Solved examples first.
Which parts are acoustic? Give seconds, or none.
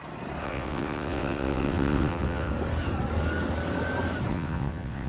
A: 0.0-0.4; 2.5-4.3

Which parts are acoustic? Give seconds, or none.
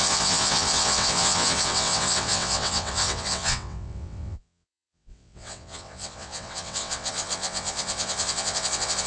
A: none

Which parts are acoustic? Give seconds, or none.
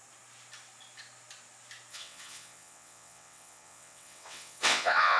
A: 0.0-1.9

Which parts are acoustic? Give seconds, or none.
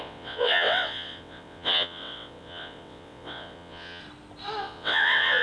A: 4.0-4.6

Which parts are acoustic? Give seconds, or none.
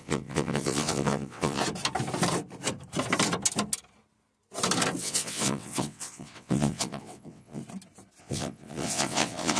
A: 1.6-5.0; 7.6-8.2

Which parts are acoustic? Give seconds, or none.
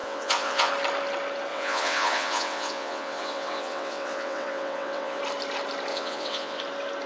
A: 0.7-1.5; 5.2-5.9; 6.6-7.1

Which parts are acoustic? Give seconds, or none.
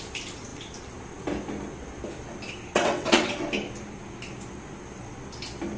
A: 0.0-2.7; 3.3-5.8